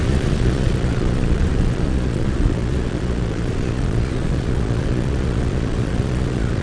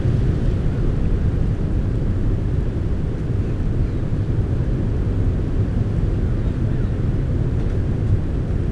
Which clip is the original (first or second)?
second